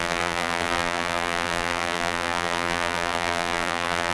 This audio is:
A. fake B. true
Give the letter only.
A